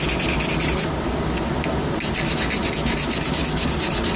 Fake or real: real